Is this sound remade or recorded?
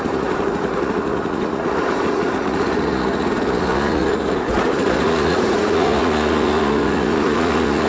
remade